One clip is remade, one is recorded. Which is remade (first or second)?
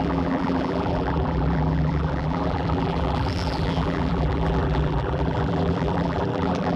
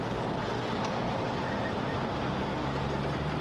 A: first